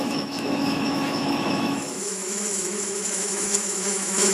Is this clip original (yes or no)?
no